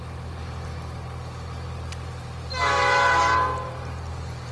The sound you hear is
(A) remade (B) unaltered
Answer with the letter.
B